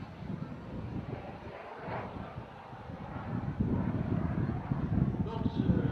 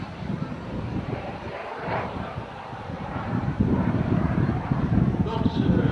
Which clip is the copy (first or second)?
second